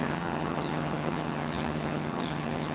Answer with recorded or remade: remade